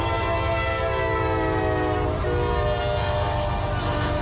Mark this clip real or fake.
real